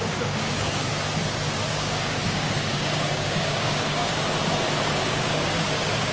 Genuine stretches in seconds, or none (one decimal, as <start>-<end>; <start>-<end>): 0.9-1.7; 4.1-4.8